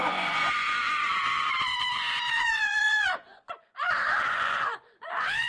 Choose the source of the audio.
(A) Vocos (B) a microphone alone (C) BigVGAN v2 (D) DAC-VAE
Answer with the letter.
A